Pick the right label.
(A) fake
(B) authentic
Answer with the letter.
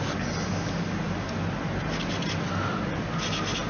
B